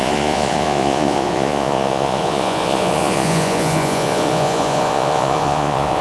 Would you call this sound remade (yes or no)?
yes